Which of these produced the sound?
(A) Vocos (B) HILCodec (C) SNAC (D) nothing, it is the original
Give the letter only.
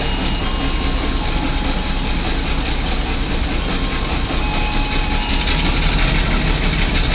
D